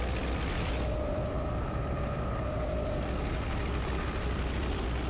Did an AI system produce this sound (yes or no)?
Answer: yes